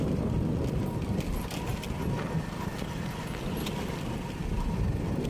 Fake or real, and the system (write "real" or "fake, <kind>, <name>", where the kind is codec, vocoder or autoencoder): real